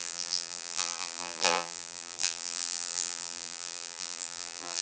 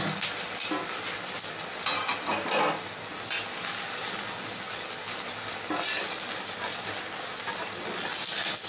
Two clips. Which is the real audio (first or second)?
second